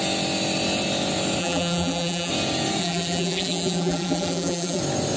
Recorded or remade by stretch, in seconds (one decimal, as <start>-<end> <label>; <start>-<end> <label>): 0.0-1.4 recorded; 1.4-2.3 remade; 2.3-2.8 recorded; 2.8-4.8 remade; 4.8-5.2 recorded